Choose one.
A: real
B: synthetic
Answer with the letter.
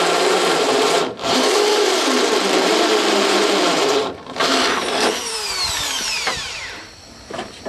B